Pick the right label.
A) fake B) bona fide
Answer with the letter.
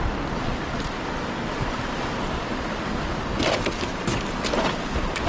B